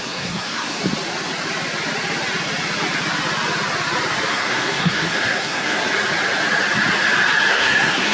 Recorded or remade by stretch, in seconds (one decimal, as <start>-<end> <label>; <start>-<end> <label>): 0.0-0.8 remade; 0.8-4.3 recorded; 4.3-5.8 remade; 5.8-7.5 recorded; 7.5-8.1 remade